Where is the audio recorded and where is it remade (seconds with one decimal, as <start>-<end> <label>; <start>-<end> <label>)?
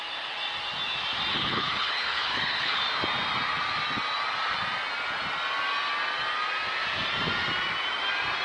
0.0-1.3 recorded; 1.3-2.8 remade; 2.8-8.4 recorded